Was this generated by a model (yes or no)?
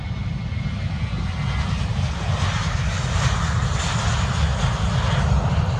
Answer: no